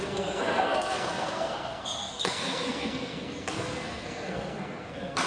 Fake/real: fake